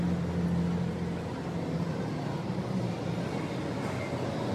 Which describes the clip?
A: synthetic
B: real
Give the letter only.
B